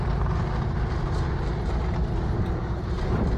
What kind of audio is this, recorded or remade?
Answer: recorded